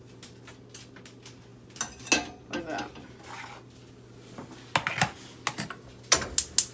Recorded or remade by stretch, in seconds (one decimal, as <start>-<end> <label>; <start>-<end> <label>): 0.0-6.7 recorded